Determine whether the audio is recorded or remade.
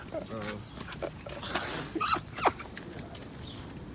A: recorded